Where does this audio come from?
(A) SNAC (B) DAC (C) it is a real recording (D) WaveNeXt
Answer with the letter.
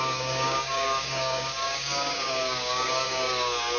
B